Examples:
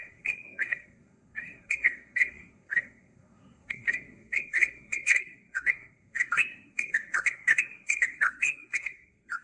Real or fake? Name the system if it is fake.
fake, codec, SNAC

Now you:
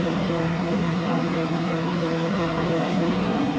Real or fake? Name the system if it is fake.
fake, codec, SNAC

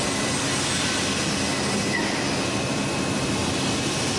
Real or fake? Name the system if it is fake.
real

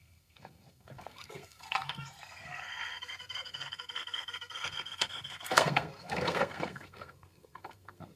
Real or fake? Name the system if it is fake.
fake, codec, SNAC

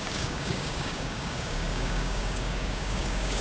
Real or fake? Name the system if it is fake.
fake, codec, DAC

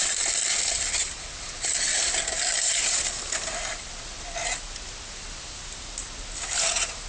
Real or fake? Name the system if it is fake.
real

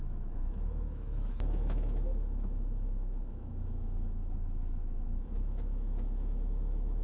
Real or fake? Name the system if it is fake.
fake, autoencoder, DAC-VAE